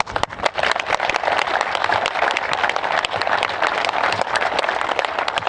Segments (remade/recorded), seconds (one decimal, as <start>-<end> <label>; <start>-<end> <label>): 0.0-5.5 recorded